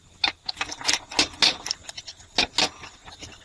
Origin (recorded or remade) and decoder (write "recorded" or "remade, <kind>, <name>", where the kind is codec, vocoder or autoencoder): recorded